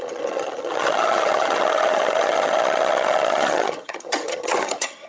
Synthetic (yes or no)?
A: yes